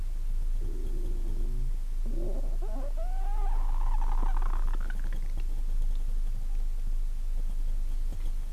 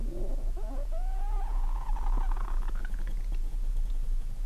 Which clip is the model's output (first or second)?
second